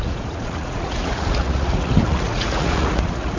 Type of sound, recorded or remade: remade